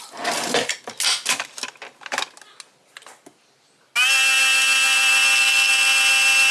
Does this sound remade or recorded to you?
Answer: recorded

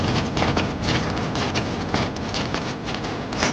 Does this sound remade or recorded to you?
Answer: recorded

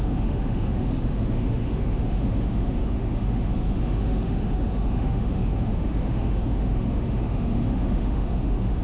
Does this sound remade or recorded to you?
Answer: remade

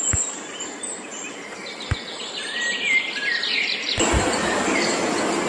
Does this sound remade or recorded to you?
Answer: recorded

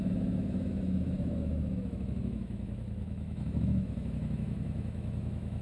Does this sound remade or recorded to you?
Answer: remade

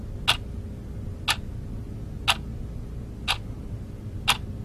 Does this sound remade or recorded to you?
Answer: recorded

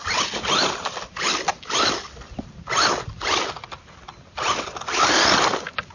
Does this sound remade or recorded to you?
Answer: recorded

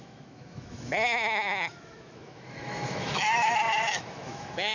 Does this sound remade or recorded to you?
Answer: remade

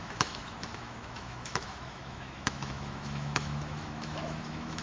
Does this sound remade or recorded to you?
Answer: remade